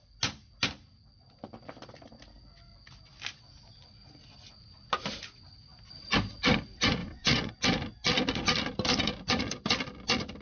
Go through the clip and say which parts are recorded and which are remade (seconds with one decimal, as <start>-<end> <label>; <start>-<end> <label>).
0.0-7.0 recorded; 7.0-7.5 remade; 7.5-10.4 recorded